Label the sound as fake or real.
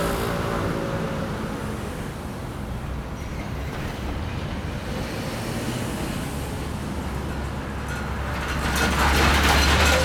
real